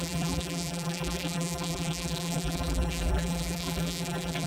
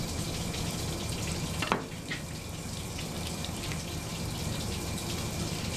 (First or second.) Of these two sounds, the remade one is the first